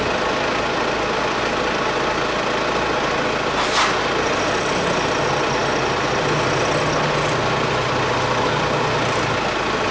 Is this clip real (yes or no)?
yes